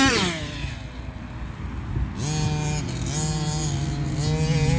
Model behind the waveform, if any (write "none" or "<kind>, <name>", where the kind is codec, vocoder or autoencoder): none